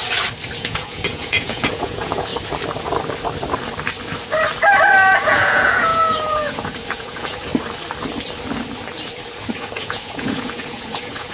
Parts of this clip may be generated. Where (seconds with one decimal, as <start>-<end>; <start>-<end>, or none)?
0.6-2.3; 5.1-7.5; 9.5-11.3